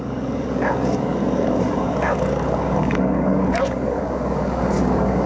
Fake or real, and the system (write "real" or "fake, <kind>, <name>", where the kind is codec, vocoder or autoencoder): fake, codec, DAC